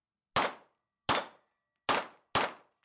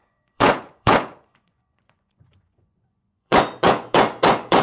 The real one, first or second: first